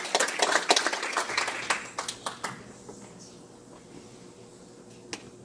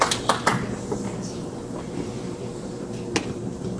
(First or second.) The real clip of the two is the first